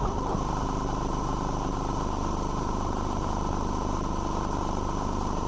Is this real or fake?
real